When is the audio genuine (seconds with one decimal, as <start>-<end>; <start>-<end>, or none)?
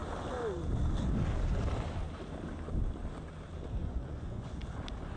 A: 0.0-3.8; 4.6-5.2